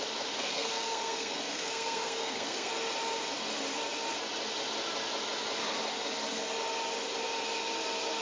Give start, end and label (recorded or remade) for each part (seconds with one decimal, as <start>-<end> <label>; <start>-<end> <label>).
0.0-0.4 recorded; 0.4-2.7 remade; 2.7-8.2 recorded